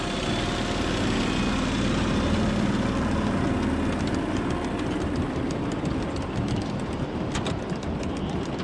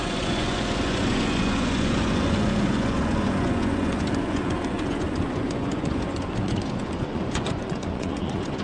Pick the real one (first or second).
first